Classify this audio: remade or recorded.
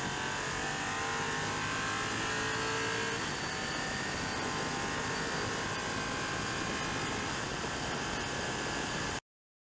recorded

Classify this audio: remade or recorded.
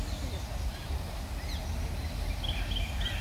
recorded